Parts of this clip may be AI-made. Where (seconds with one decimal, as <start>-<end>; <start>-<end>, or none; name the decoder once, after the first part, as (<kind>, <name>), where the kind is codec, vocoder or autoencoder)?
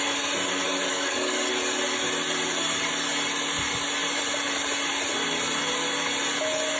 0.9-1.5 (codec, DAC)